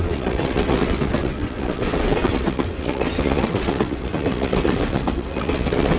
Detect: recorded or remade remade